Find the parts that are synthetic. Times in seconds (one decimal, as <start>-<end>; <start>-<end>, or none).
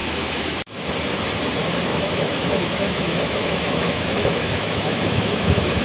0.0-0.9; 1.9-5.8